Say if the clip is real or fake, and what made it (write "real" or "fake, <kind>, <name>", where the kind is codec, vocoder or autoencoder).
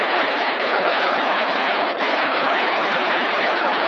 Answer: fake, codec, HILCodec